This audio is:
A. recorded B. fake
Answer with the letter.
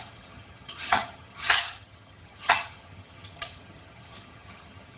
B